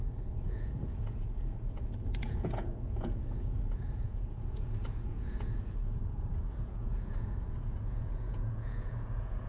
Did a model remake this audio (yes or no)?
yes